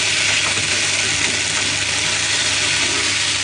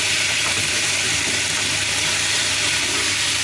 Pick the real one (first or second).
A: first